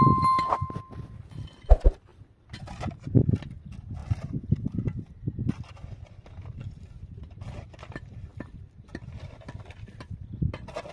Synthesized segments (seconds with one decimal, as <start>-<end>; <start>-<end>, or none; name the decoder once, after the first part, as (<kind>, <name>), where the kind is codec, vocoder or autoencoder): none